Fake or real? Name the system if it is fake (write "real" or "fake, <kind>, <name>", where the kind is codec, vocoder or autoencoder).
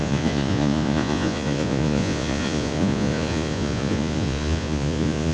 fake, vocoder, Vocos